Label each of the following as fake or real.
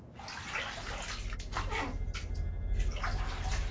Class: real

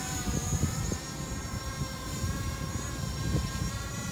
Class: fake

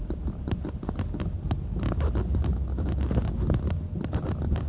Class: real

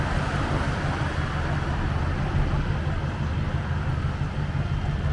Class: real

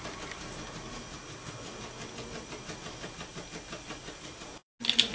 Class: real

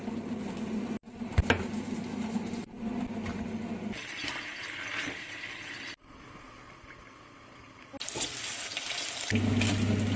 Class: real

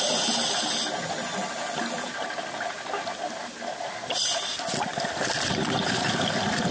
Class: real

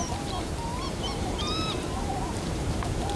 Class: fake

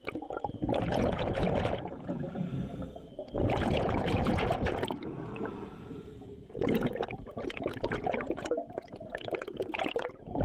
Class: fake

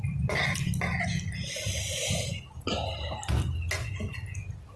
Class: real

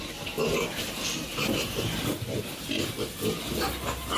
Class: real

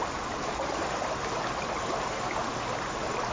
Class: real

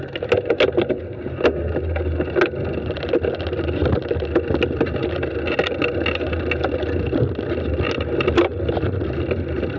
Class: real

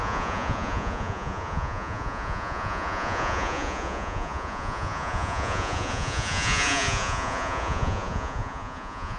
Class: fake